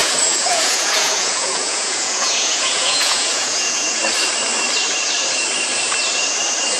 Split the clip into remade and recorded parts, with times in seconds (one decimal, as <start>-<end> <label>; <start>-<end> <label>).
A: 0.0-4.0 remade; 4.0-6.8 recorded

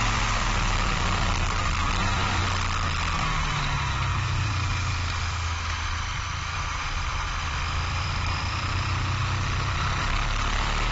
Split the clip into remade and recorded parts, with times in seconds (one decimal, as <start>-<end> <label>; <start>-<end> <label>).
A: 0.0-2.4 remade; 2.4-3.6 recorded; 3.6-10.9 remade

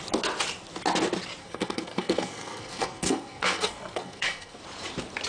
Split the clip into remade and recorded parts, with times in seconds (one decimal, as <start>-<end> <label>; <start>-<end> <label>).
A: 0.0-1.4 recorded; 1.4-4.6 remade; 4.6-5.3 recorded

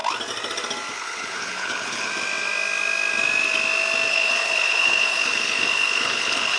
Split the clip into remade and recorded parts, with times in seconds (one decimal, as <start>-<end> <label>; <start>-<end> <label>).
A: 0.0-0.9 recorded; 0.9-2.1 remade; 2.1-4.1 recorded; 4.1-6.6 remade

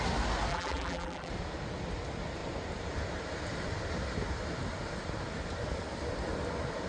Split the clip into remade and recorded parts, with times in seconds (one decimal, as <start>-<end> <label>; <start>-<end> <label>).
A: 0.0-0.5 recorded; 0.5-1.3 remade; 1.3-6.9 recorded

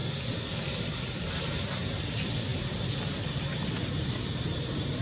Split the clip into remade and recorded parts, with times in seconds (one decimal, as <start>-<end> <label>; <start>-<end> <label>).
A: 0.0-5.0 recorded

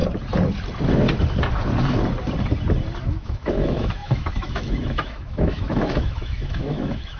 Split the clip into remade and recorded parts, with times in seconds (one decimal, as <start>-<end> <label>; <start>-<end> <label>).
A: 0.0-3.0 recorded; 3.0-7.2 remade